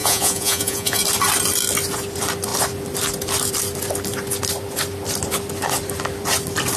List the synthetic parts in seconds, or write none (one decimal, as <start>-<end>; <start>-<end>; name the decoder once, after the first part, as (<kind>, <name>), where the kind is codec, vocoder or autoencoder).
0.0-1.0 (vocoder, Vocos)